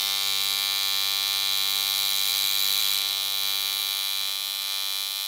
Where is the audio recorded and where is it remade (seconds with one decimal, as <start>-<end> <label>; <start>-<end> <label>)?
0.0-5.3 recorded